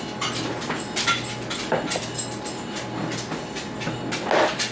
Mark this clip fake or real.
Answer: real